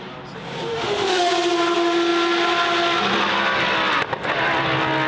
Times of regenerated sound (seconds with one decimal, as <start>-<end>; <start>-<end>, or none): 0.7-1.3